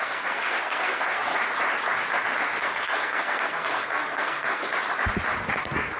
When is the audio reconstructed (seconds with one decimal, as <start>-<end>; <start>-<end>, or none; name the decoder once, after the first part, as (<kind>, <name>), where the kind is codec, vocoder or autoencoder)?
0.0-1.3 (codec, SNAC); 2.6-4.6; 5.6-6.0